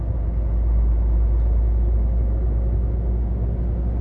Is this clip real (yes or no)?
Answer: yes